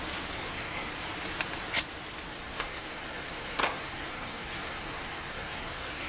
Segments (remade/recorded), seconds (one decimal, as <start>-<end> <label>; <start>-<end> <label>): 0.0-0.4 recorded; 0.4-0.9 remade; 0.9-2.3 recorded; 2.3-6.1 remade